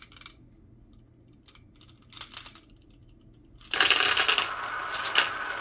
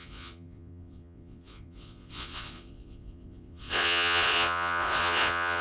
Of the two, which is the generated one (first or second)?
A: second